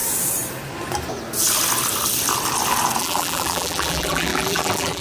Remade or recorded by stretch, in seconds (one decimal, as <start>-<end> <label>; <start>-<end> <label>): 0.0-3.0 recorded; 3.0-5.0 remade